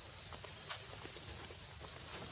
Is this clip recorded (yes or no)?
yes